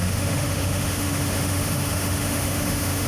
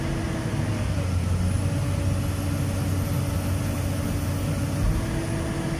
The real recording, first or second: second